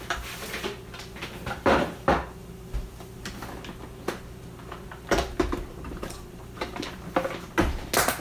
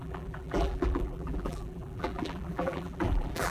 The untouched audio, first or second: first